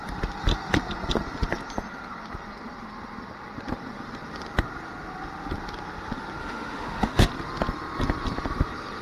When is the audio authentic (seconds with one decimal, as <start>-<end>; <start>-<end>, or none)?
0.0-6.4; 7.3-9.0